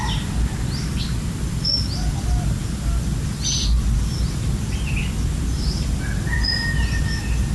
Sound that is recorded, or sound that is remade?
recorded